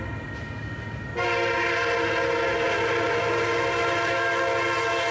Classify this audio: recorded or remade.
recorded